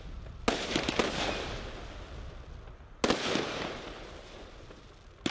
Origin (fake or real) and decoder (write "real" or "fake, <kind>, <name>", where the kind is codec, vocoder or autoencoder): real